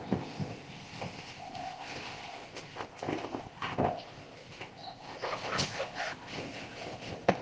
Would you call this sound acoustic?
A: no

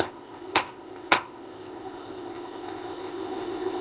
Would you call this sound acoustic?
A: no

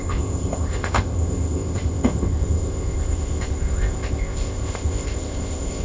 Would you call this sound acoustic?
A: no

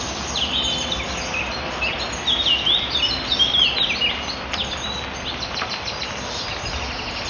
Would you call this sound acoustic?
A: yes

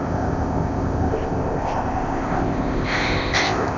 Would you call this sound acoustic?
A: no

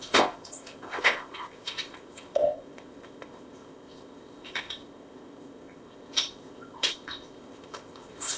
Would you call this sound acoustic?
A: no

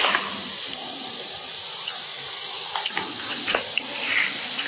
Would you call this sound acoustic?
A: yes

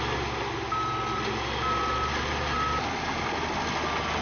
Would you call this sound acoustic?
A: yes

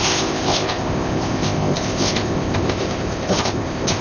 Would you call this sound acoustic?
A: no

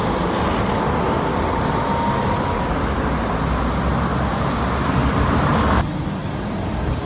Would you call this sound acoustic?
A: yes